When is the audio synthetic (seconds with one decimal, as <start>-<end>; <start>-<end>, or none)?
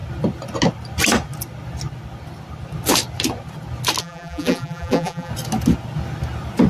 4.0-5.3